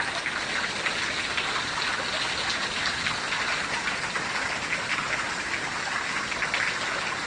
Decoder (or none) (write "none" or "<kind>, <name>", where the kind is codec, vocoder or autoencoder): none